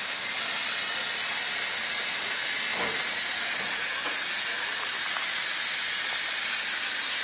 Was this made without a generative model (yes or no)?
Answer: yes